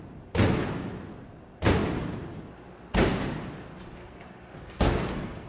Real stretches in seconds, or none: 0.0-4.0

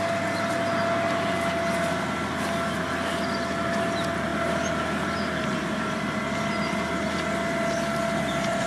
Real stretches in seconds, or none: 0.0-8.7

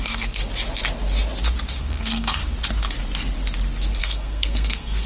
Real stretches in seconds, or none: 0.4-1.8; 2.4-4.0